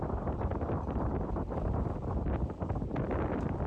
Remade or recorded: recorded